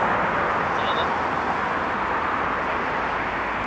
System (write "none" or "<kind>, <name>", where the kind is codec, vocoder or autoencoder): none